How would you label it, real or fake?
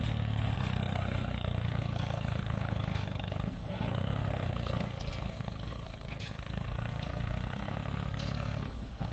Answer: fake